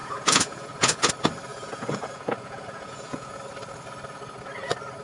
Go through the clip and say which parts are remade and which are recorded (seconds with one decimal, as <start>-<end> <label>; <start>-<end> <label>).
0.0-1.1 remade; 1.1-1.5 recorded; 1.5-3.4 remade; 3.4-5.0 recorded